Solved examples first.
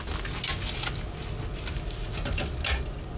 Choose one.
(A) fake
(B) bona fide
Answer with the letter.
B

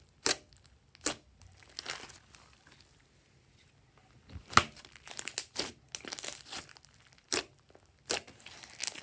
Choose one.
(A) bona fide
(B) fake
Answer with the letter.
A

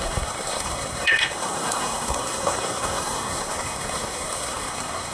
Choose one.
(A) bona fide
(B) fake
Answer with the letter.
B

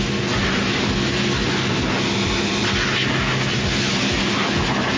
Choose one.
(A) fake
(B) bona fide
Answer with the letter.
B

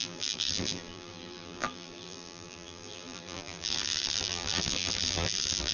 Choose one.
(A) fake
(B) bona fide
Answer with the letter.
A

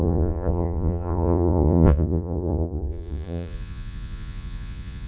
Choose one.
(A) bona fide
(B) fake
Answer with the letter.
B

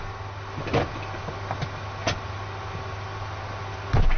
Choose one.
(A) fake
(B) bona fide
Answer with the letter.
B